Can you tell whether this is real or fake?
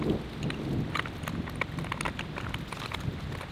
real